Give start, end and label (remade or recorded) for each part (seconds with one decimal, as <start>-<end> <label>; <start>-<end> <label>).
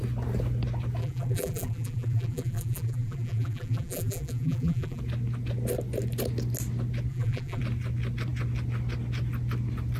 0.0-1.0 recorded; 1.0-5.0 remade; 5.0-7.1 recorded; 7.1-7.6 remade; 7.6-10.0 recorded